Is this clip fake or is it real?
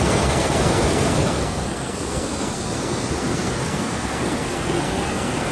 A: fake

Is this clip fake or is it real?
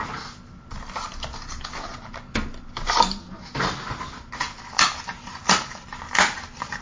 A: real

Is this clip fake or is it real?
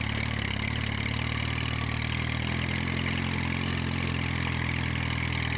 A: real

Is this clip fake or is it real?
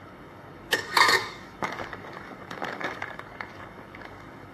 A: fake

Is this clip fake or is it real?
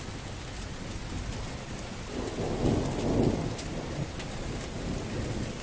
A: real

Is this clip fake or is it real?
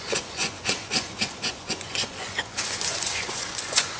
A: fake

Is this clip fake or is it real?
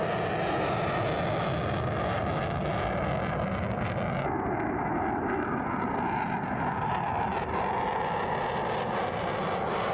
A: real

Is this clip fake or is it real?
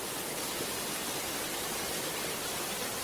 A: real